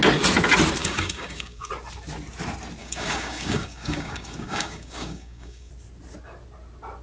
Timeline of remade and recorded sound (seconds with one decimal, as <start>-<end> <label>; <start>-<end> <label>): 0.0-0.8 recorded; 0.8-1.7 remade; 1.7-2.8 recorded; 2.8-5.7 remade; 5.7-7.0 recorded